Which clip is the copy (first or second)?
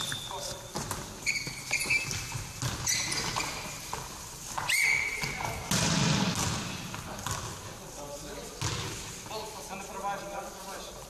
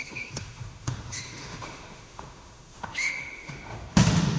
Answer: second